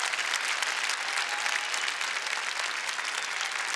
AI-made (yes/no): no